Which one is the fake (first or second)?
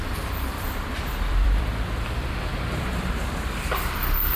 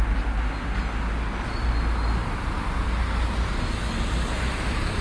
first